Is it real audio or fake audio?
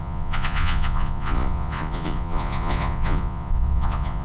fake